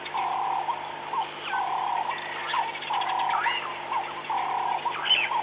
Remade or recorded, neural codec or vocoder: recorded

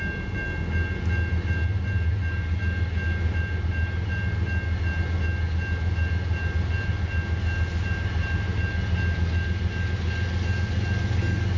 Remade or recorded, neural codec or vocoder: recorded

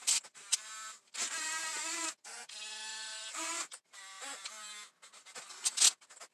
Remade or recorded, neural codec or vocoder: recorded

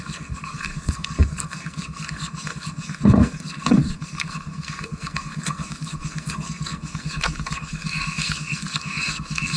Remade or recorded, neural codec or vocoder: remade, codec, SNAC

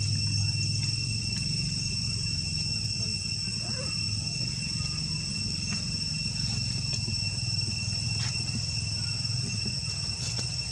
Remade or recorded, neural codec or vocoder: recorded